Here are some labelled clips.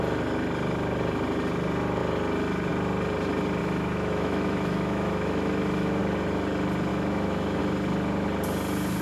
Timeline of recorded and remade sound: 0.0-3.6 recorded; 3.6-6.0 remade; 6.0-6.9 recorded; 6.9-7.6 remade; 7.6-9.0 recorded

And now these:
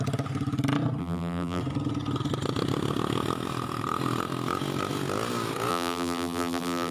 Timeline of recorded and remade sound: 0.0-1.0 recorded; 1.0-1.6 remade; 1.6-5.7 recorded; 5.7-6.9 remade

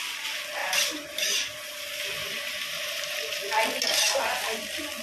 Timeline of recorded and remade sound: 0.0-0.6 recorded; 0.6-1.8 remade; 1.8-2.2 recorded; 2.2-3.4 remade; 3.4-5.0 recorded

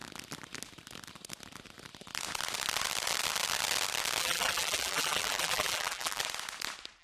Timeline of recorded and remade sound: 0.0-4.2 recorded; 4.2-6.2 remade; 6.2-7.0 recorded

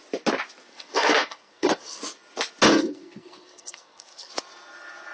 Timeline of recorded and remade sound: 0.0-0.7 recorded; 0.7-2.0 remade; 2.0-2.7 recorded; 2.7-4.3 remade; 4.3-5.1 recorded

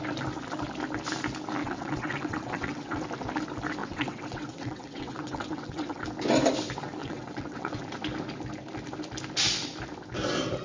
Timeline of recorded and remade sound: 0.0-1.6 recorded; 1.6-3.0 remade; 3.0-3.8 recorded; 3.8-6.1 remade; 6.1-7.0 recorded; 7.0-7.8 remade; 7.8-10.6 recorded

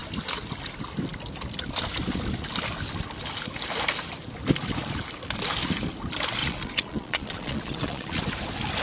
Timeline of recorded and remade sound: 0.0-6.4 recorded; 6.4-8.2 remade; 8.2-8.8 recorded

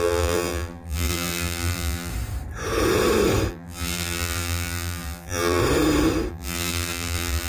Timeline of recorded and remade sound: 0.0-2.1 remade; 2.1-3.5 recorded; 3.5-5.6 remade; 5.6-6.3 recorded; 6.3-7.5 remade